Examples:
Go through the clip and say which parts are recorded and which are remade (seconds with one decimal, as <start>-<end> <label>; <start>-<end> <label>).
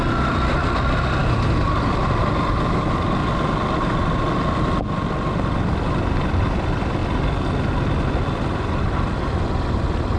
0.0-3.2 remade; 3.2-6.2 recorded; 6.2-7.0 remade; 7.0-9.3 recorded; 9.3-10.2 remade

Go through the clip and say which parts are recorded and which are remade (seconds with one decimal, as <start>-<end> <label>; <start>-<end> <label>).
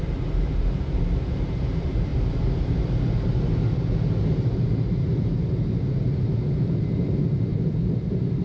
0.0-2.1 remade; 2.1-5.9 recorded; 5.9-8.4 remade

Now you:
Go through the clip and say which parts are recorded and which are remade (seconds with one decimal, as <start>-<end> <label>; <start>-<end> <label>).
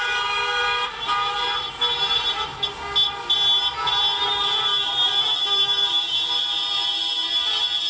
0.0-2.5 remade; 2.5-4.2 recorded; 4.2-7.9 remade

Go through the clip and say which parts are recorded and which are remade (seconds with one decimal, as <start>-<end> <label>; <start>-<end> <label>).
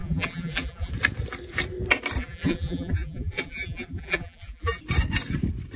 0.0-0.9 remade; 0.9-2.2 recorded; 2.2-4.8 remade; 4.8-5.8 recorded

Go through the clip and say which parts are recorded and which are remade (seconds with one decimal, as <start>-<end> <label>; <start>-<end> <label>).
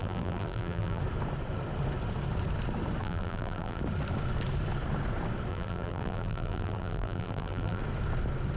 0.0-1.0 remade; 1.0-3.0 recorded; 3.0-3.8 remade; 3.8-5.5 recorded; 5.5-7.8 remade; 7.8-8.6 recorded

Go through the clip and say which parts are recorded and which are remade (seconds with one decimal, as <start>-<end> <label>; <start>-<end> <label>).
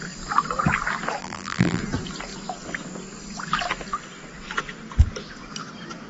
0.0-1.2 recorded; 1.2-1.8 remade; 1.8-6.1 recorded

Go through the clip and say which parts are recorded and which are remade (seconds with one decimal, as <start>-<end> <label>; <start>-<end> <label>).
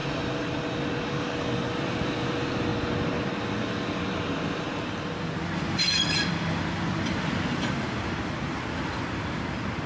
0.0-1.0 recorded; 1.0-2.7 remade; 2.7-3.9 recorded; 3.9-9.9 remade